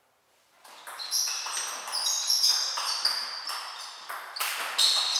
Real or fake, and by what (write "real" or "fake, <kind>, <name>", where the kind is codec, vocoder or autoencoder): real